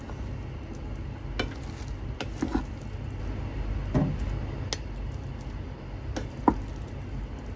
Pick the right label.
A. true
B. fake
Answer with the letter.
A